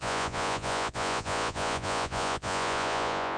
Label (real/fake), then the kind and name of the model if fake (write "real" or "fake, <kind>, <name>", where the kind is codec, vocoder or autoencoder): fake, vocoder, Vocos